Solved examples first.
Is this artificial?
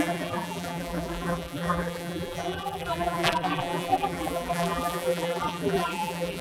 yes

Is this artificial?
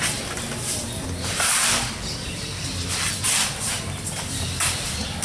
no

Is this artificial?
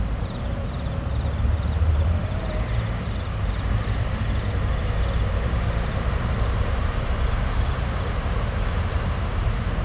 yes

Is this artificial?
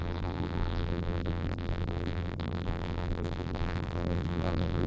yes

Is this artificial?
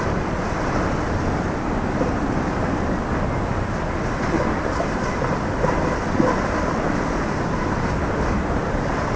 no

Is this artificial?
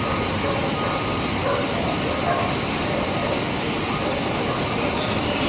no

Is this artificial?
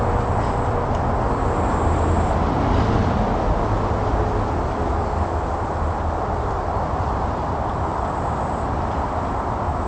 no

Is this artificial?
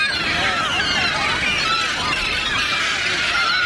no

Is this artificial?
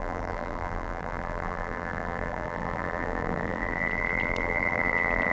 yes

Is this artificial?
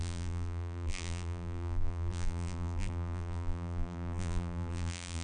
yes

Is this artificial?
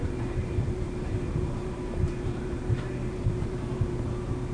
yes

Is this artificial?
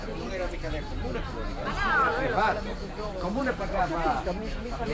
yes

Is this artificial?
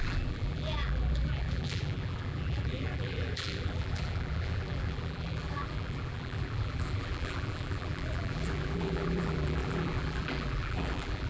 yes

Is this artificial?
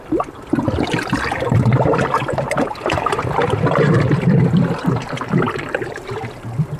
yes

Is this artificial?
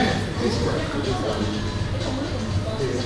no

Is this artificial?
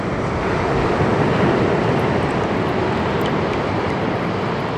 yes